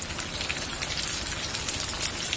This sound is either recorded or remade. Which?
recorded